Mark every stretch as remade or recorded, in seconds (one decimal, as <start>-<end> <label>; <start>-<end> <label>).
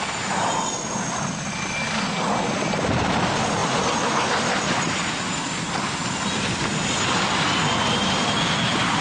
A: 0.0-9.0 recorded